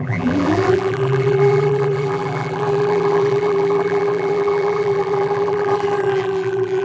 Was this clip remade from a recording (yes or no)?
yes